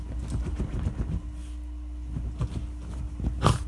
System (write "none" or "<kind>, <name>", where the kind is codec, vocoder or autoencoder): none